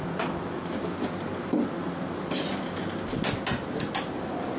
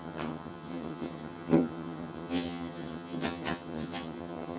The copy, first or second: second